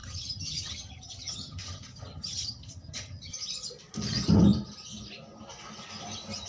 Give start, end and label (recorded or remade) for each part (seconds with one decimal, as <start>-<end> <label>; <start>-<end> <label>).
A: 0.0-3.3 remade; 3.3-6.5 recorded